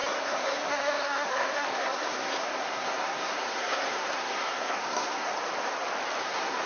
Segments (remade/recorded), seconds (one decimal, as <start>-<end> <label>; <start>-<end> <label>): 0.0-5.3 remade; 5.3-6.2 recorded; 6.2-6.7 remade